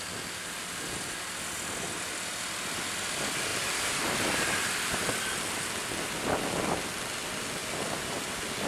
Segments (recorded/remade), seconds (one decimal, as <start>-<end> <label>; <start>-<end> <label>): 0.0-7.6 recorded; 7.6-8.7 remade